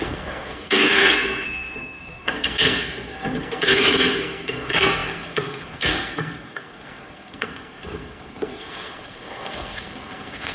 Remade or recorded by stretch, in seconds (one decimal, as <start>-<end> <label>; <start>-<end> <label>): 0.0-10.5 remade